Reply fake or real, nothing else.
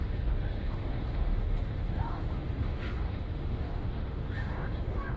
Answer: fake